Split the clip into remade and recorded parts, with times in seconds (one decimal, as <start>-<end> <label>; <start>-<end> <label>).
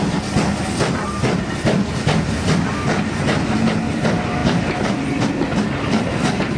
0.0-6.6 recorded